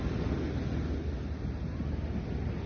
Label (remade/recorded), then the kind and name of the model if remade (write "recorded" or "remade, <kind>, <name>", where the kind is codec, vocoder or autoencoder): recorded